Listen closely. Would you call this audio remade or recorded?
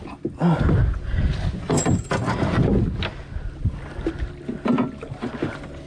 recorded